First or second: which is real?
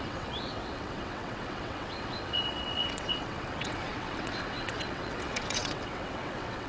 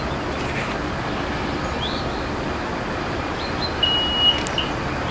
second